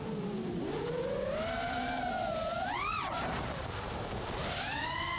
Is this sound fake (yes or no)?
yes